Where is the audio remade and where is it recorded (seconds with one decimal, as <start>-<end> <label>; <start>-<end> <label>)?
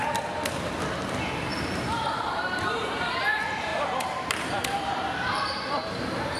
0.0-1.5 recorded; 1.5-3.2 remade; 3.2-3.7 recorded; 3.7-5.4 remade; 5.4-6.4 recorded